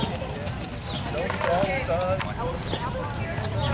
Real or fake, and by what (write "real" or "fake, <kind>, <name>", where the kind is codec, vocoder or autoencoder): real